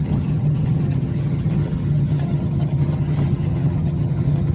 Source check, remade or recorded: remade